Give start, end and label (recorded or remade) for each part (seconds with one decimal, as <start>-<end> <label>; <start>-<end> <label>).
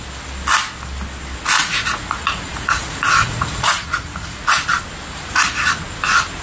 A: 0.0-1.6 recorded; 1.6-4.6 remade; 4.6-5.1 recorded; 5.1-5.7 remade; 5.7-6.4 recorded